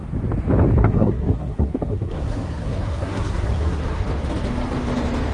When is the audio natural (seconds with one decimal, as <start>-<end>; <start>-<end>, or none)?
0.0-0.8; 4.0-5.3

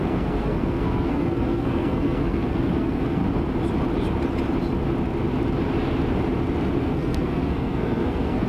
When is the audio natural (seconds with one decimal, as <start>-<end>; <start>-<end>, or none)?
3.2-6.8

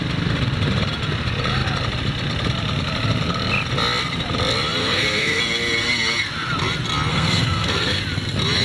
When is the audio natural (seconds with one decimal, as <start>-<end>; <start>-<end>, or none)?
0.0-4.8; 5.4-7.1; 8.0-8.6

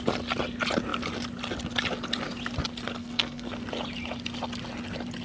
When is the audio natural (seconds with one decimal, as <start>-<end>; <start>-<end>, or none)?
0.0-3.0; 3.5-5.2

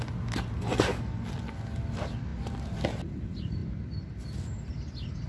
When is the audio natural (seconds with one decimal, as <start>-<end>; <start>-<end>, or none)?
0.0-5.3

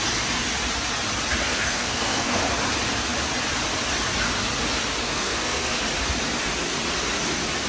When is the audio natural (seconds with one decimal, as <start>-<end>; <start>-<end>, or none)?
0.0-1.5; 2.4-5.0; 5.8-7.7

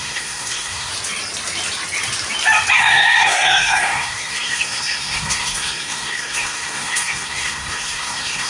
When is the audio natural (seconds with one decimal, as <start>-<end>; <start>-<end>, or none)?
0.9-2.8